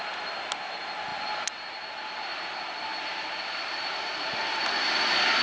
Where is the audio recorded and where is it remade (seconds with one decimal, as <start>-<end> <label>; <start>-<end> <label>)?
0.0-5.4 recorded